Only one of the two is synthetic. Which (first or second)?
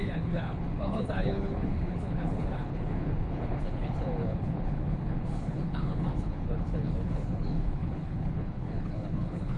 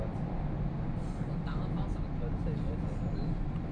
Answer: first